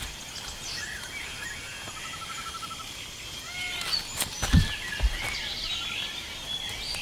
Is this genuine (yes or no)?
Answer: yes